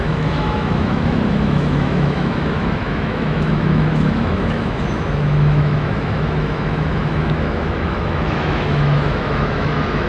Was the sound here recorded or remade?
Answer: remade